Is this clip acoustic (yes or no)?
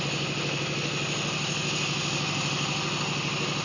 yes